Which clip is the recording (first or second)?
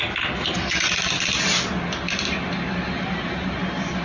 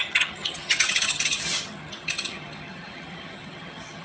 first